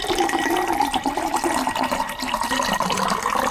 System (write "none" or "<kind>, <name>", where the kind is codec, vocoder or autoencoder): none